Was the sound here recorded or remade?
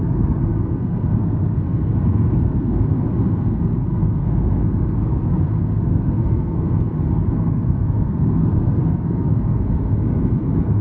remade